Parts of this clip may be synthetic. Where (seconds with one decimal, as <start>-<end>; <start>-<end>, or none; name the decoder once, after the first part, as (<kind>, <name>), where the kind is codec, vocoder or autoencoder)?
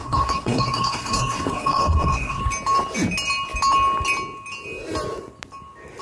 0.0-2.4 (codec, SNAC)